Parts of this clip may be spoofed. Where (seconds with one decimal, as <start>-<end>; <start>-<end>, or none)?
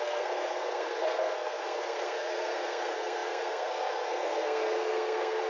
0.0-5.5